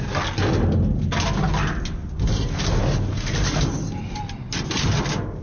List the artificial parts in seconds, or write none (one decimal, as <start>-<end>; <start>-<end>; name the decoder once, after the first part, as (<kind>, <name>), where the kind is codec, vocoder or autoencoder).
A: none